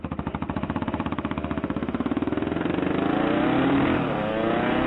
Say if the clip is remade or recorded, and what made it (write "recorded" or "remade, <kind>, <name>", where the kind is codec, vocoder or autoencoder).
recorded